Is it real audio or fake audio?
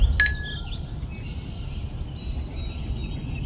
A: real